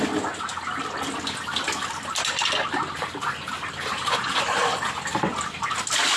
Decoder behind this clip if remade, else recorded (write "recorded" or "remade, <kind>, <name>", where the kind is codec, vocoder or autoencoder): recorded